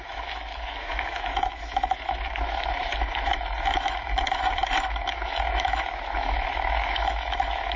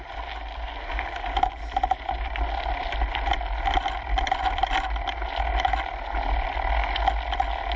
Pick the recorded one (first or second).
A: second